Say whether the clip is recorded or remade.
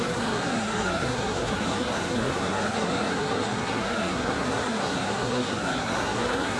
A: remade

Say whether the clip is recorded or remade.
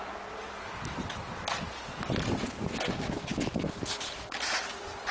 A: recorded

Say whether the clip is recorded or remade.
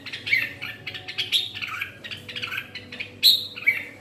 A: recorded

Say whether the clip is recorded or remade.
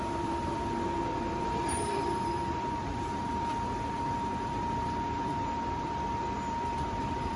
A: remade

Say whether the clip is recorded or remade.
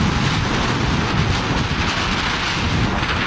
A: recorded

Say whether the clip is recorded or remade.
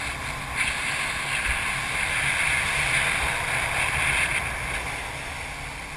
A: recorded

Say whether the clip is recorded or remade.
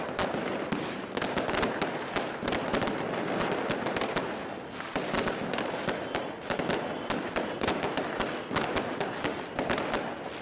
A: recorded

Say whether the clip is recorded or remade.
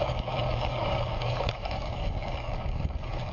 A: remade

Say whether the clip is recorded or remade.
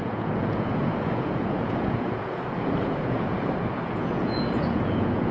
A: remade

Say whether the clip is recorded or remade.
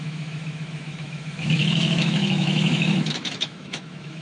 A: remade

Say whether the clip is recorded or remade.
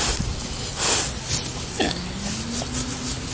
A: recorded